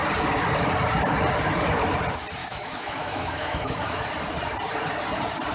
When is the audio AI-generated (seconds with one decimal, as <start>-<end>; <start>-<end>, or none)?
2.4-4.1